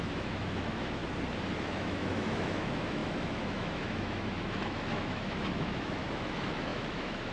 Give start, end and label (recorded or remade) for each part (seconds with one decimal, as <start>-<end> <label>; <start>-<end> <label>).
0.0-1.0 remade; 1.0-1.6 recorded; 1.6-7.3 remade